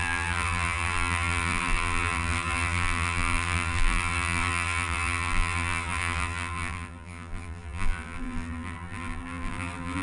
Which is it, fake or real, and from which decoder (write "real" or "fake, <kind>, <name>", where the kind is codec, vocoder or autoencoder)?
fake, vocoder, BigVGAN v2